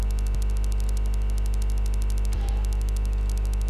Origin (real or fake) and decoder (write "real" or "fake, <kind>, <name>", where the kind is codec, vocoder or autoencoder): real